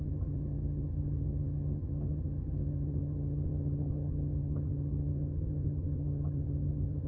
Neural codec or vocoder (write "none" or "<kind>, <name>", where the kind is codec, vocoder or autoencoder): vocoder, HiFi-GAN